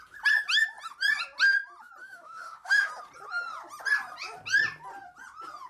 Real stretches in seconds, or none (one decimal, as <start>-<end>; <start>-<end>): 0.0-2.0; 2.9-5.7